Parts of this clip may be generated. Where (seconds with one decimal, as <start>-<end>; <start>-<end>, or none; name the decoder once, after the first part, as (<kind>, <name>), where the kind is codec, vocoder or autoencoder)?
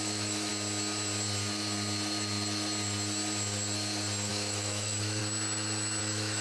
0.0-0.5 (autoencoder, DAC-VAE); 4.3-5.2; 6.0-6.4